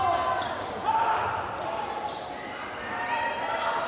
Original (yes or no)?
yes